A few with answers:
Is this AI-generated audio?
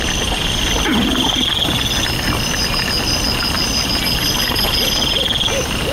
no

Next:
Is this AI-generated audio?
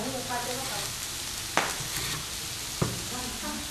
no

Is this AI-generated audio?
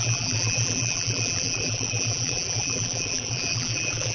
yes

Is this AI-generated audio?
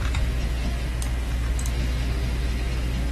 no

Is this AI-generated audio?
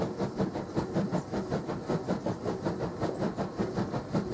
no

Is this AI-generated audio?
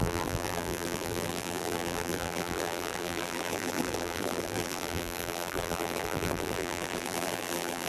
yes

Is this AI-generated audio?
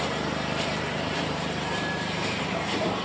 yes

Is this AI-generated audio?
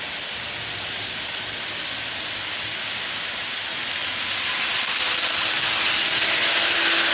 no